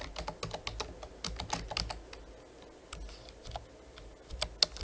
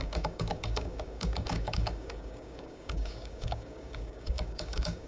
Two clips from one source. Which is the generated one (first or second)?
second